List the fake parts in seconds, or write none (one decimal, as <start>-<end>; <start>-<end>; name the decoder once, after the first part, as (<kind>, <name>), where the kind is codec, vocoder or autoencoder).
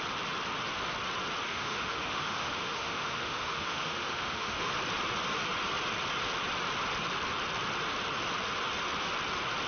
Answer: 1.5-4.7 (autoencoder, DAC-VAE)